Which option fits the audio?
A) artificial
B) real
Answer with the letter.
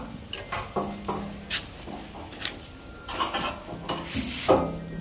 B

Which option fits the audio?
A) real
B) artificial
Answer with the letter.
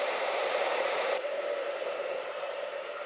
B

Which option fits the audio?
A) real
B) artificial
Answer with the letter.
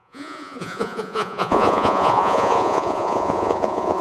B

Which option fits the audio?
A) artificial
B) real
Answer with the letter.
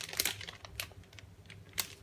B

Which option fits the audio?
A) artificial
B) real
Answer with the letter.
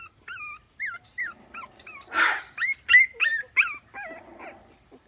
B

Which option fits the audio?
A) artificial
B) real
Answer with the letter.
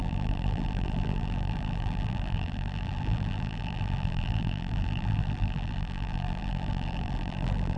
A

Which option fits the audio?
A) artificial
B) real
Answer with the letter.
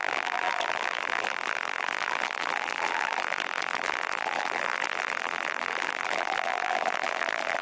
A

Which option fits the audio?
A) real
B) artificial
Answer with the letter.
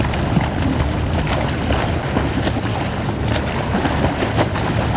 A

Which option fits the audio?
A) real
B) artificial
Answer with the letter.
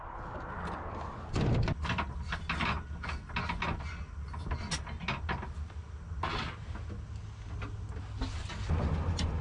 A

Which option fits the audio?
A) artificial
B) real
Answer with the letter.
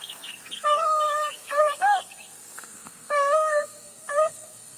A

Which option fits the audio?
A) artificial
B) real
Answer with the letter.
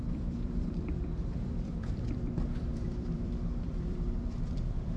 A